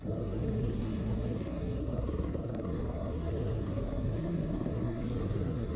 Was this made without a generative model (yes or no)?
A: no